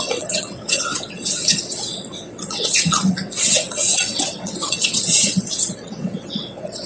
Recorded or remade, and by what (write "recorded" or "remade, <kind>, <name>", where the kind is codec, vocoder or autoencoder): remade, vocoder, WaveNeXt